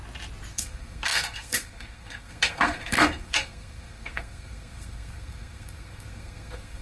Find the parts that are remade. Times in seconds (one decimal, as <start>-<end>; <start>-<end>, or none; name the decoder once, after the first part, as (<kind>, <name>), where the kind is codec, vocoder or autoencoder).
0.5-6.8 (codec, SNAC)